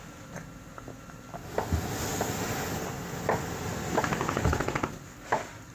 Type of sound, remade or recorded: recorded